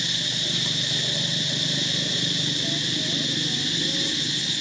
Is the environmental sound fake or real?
real